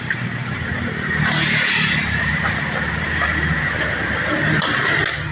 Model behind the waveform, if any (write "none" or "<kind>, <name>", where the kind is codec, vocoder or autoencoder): vocoder, BigVGAN v2